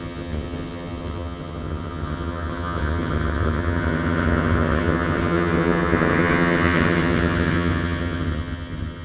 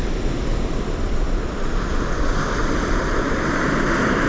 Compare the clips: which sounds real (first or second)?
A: second